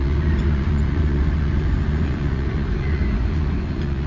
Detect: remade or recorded remade